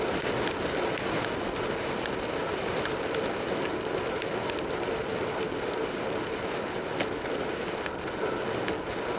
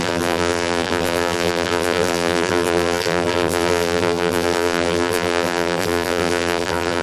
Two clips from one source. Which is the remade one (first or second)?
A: second